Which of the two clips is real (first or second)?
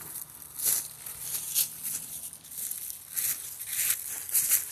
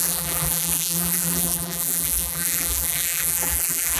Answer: first